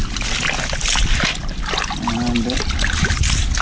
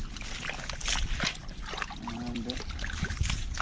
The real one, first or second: first